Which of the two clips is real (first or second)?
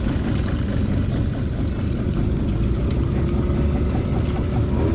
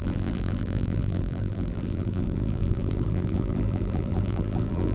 first